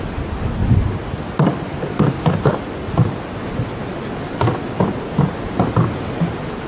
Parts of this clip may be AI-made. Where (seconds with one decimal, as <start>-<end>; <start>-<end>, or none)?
none